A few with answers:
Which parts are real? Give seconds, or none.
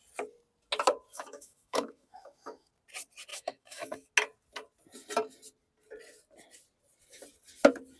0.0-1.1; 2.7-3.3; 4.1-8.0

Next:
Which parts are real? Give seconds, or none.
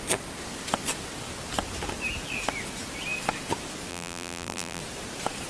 0.0-3.9; 4.8-5.5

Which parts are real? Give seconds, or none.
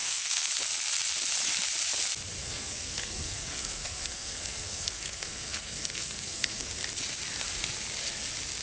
0.5-2.4; 6.7-8.6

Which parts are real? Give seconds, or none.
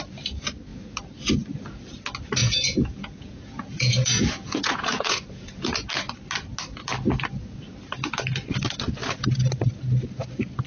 0.0-2.4; 5.9-10.7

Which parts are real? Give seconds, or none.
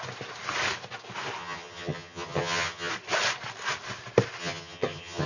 0.0-1.4; 2.9-4.4